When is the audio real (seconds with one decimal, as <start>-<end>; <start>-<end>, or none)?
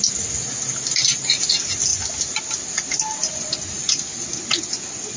0.0-5.2